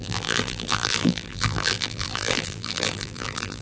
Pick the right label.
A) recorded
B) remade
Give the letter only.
B